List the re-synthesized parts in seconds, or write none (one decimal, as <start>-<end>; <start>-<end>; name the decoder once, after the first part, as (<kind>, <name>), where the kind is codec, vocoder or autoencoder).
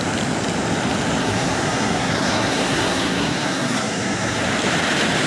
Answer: 1.2-4.4 (codec, SNAC)